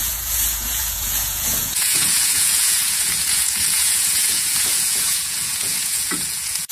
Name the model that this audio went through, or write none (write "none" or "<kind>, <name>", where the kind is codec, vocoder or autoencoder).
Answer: vocoder, Vocos